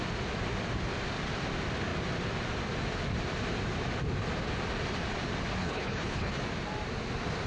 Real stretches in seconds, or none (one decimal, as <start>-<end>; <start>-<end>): 0.0-5.6; 6.4-7.5